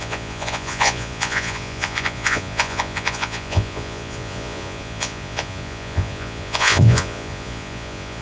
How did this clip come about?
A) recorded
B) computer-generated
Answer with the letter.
B